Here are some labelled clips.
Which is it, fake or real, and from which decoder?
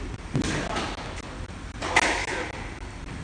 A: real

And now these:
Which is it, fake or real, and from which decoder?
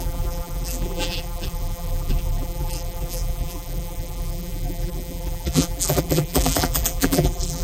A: fake, vocoder, BigVGAN v2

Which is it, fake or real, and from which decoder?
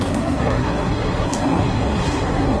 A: fake, codec, SNAC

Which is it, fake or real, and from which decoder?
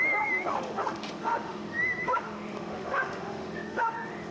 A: fake, autoencoder, DAC-VAE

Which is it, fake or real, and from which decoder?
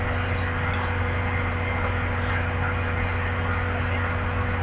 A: real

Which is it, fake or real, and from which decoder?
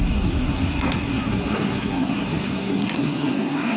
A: fake, codec, SNAC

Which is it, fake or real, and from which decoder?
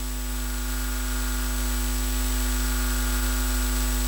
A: real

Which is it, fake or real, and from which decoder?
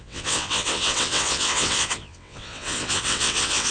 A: fake, vocoder, WaveNeXt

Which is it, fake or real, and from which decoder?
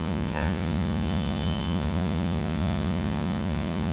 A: fake, vocoder, Vocos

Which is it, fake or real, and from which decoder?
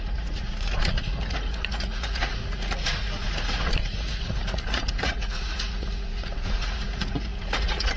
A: fake, vocoder, Vocos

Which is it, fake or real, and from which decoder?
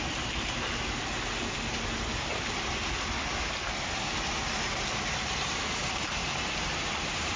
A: real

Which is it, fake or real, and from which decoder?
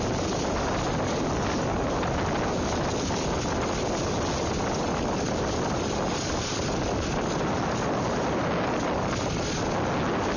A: real